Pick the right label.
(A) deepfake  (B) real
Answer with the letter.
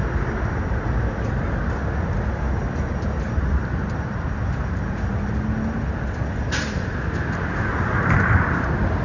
B